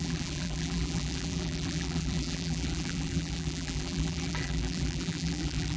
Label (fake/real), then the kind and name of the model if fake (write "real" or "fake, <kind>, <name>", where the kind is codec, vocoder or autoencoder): fake, vocoder, BigVGAN v2